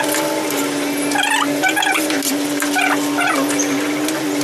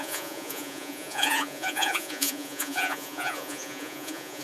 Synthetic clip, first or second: second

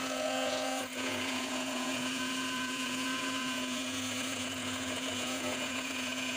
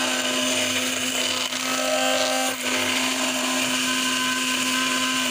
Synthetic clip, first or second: first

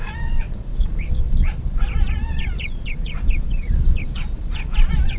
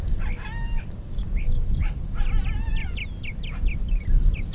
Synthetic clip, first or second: first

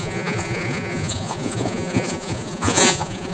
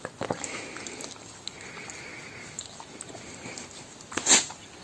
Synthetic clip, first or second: first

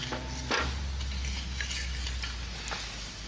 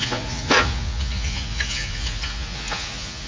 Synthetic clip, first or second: second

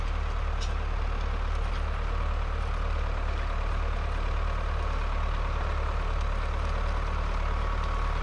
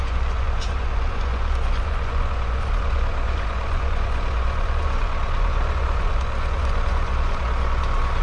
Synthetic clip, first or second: second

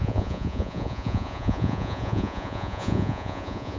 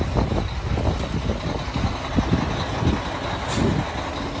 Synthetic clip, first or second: first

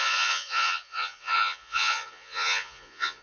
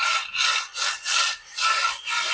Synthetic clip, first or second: first